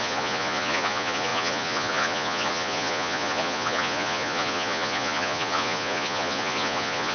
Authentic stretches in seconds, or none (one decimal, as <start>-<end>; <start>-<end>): none